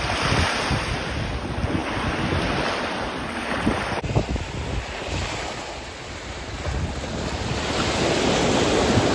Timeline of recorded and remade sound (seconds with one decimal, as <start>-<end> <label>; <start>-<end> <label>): 0.0-9.1 recorded